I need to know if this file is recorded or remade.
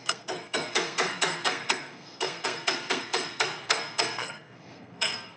remade